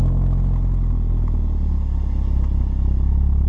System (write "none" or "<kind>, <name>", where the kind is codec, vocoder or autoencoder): none